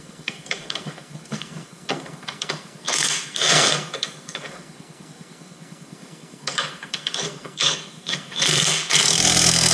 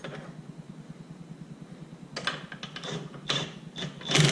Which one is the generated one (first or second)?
first